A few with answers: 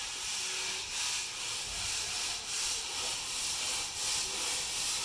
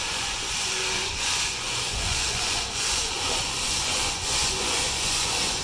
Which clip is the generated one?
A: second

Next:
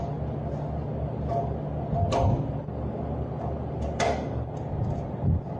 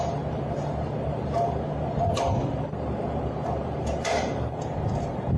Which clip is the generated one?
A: second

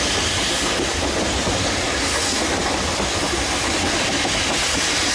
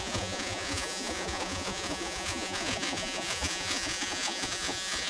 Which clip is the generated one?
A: second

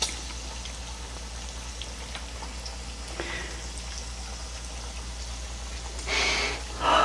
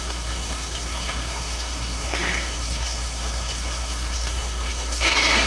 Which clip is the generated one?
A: second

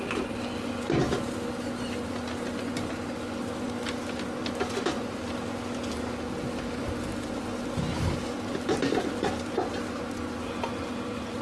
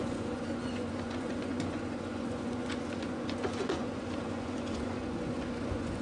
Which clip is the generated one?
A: second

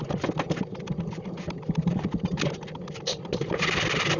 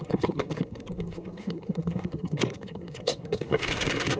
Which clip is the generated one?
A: second